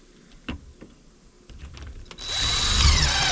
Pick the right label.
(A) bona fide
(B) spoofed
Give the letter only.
A